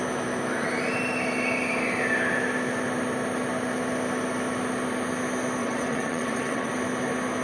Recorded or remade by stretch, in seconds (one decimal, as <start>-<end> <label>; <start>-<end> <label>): 0.0-5.6 recorded; 5.6-6.7 remade; 6.7-7.4 recorded